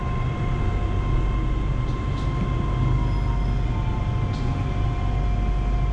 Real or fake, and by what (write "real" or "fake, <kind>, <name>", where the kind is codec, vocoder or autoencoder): real